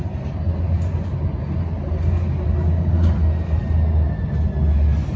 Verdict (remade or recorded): recorded